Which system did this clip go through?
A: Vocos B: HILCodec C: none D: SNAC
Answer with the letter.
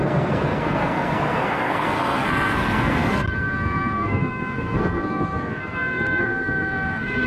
D